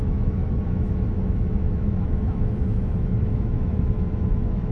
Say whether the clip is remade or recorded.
remade